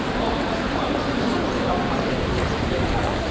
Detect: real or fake fake